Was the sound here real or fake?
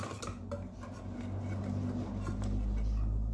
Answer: real